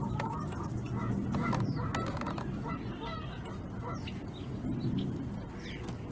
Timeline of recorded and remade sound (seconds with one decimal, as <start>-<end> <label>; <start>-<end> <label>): 0.0-6.1 recorded